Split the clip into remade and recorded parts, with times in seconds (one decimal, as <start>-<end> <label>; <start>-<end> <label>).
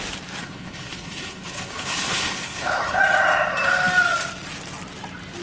0.0-0.4 recorded; 0.4-3.0 remade; 3.0-5.4 recorded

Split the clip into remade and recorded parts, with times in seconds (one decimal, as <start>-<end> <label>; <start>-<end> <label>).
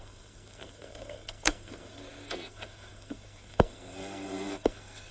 0.0-5.1 remade